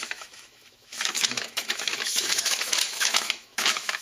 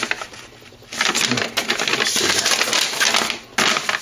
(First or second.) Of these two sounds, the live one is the second